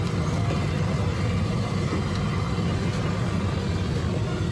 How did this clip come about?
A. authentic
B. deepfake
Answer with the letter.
A